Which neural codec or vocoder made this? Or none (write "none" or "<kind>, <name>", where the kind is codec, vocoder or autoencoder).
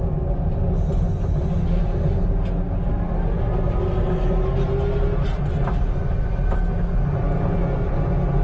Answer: none